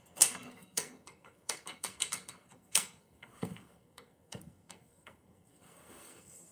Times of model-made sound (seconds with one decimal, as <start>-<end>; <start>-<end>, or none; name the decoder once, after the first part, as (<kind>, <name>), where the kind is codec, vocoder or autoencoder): 0.0-6.5 (codec, SNAC)